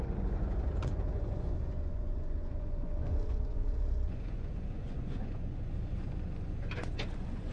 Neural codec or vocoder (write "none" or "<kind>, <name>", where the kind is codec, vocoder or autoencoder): vocoder, Vocos